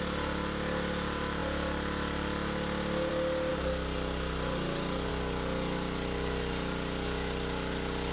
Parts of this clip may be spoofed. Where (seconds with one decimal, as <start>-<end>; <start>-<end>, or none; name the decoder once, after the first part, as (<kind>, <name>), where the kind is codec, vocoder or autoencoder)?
none